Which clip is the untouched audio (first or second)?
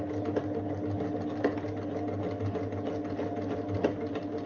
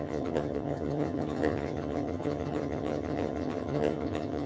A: first